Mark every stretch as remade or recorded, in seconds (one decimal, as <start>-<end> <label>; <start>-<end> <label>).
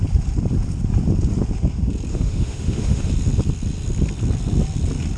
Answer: 0.0-2.1 recorded; 2.1-3.1 remade; 3.1-5.2 recorded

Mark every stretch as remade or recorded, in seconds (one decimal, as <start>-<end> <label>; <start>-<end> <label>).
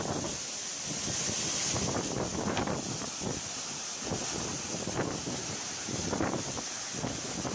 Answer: 0.0-4.1 recorded; 4.1-6.5 remade; 6.5-7.5 recorded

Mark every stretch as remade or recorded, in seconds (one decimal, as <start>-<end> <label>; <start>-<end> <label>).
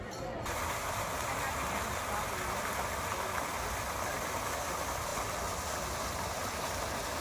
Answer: 0.0-7.2 recorded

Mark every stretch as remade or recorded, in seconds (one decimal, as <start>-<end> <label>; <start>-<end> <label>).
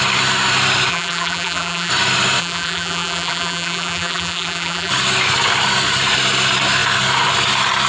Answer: 0.0-0.9 recorded; 0.9-1.9 remade; 1.9-2.4 recorded; 2.4-4.9 remade; 4.9-7.9 recorded